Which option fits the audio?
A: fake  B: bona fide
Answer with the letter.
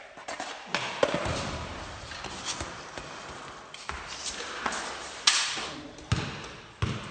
B